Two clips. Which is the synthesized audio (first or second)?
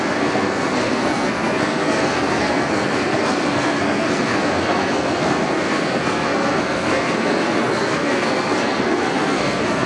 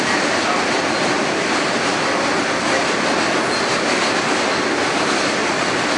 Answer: first